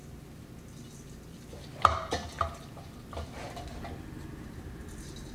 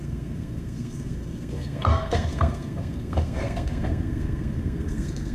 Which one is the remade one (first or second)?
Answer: second